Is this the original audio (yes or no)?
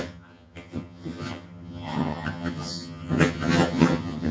no